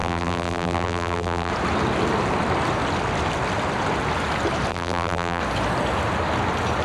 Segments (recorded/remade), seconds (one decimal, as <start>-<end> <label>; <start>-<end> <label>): 0.0-1.5 remade; 1.5-4.7 recorded; 4.7-5.4 remade; 5.4-6.8 recorded